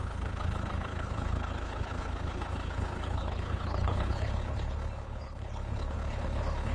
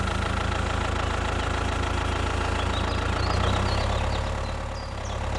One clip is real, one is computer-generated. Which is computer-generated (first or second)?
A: first